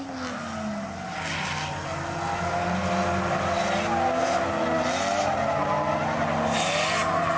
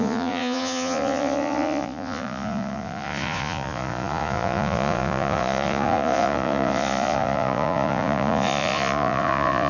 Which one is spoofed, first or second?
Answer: second